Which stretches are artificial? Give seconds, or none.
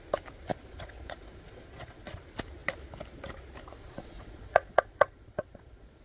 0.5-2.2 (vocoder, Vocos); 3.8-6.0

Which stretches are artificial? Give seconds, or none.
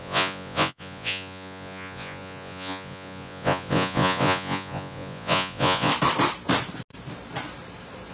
0.0-5.9 (vocoder, Vocos)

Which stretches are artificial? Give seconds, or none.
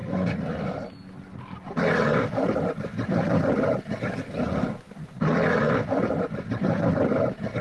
none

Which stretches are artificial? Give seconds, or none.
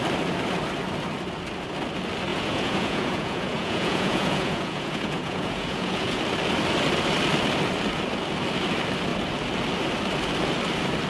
2.3-6.2 (vocoder, Vocos)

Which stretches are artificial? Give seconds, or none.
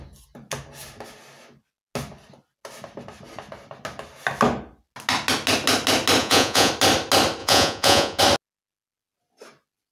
6.2-6.7 (vocoder, Vocos); 7.4-8.2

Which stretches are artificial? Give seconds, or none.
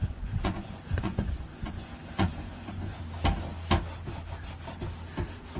0.0-3.0 (vocoder, Vocos)